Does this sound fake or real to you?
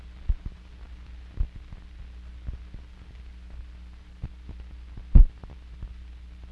real